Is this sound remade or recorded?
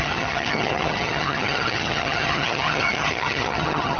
remade